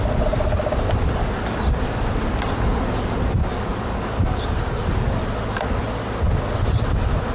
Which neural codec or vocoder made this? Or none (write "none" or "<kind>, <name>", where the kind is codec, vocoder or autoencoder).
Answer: none